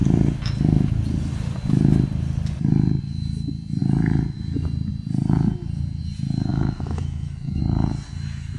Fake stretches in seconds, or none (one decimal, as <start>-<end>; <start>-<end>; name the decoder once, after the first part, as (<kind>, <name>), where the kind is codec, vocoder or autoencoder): 6.5-7.6 (autoencoder, DAC-VAE)